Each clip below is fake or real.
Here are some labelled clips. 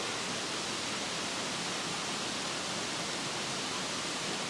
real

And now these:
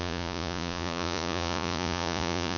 fake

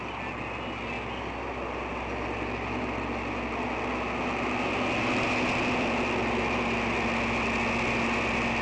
real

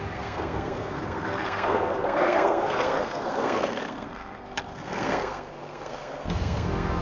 fake